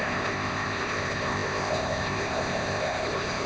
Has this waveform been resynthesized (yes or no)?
yes